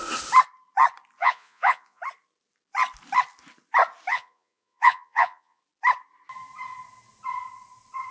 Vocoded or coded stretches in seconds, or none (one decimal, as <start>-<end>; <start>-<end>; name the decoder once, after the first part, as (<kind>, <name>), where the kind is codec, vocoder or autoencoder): 1.2-2.0 (vocoder, Vocos); 4.1-5.6